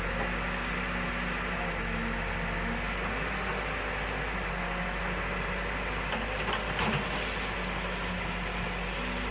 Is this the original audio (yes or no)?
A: yes